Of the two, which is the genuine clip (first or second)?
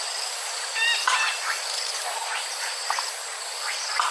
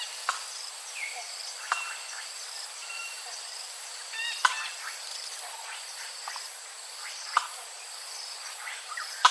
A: first